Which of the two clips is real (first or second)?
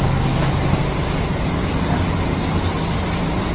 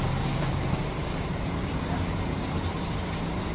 first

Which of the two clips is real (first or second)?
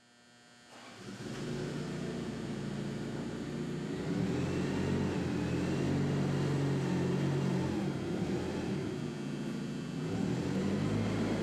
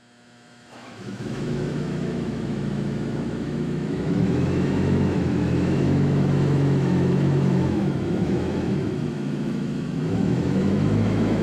first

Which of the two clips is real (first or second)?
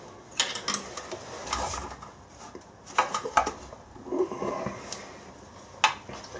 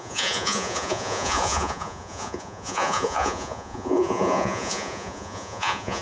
first